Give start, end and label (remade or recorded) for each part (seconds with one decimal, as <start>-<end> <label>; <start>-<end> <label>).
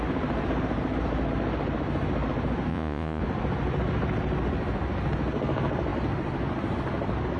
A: 0.0-2.7 recorded; 2.7-3.2 remade; 3.2-7.4 recorded